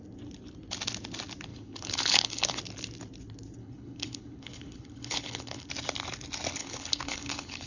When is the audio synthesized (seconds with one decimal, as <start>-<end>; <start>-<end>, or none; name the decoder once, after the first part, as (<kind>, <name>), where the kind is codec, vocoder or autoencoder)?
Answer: 1.5-2.6 (codec, HILCodec); 3.6-5.7; 6.6-7.7